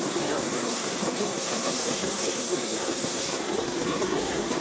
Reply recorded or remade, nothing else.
remade